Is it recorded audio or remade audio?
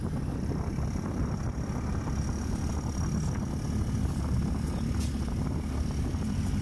recorded